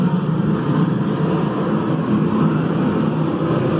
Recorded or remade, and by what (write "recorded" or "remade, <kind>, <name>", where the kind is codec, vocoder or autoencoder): recorded